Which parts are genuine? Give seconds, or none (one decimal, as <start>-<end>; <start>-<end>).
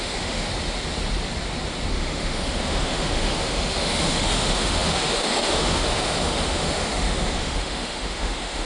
0.5-1.9